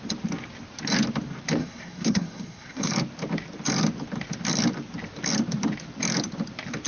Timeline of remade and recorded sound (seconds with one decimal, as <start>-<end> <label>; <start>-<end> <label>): 0.0-1.6 recorded; 1.6-2.9 remade; 2.9-6.9 recorded